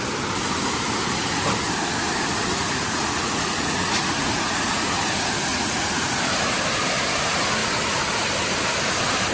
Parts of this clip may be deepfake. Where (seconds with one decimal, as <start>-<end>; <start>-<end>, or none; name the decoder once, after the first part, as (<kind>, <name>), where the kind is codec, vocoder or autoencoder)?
1.9-5.1 (vocoder, Vocos); 5.5-6.2; 7.6-8.3